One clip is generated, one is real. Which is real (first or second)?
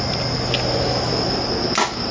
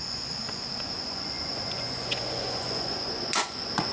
first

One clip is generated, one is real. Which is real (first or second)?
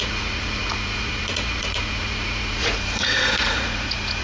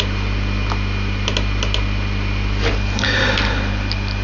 second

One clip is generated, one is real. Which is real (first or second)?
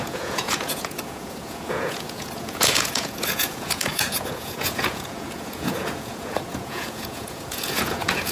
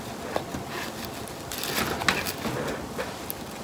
second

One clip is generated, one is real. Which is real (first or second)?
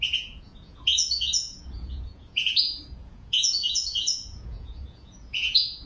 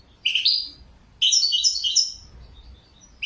second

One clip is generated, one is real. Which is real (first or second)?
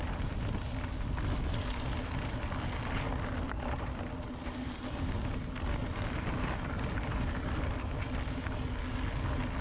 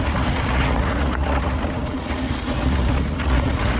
first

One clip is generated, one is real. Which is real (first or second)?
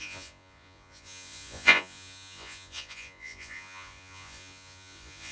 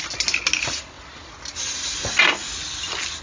second